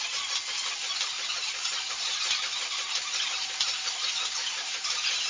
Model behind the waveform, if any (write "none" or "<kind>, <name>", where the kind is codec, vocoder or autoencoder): none